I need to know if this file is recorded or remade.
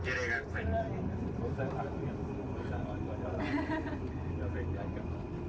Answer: recorded